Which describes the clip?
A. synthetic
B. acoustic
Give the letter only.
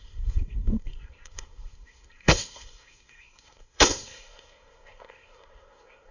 A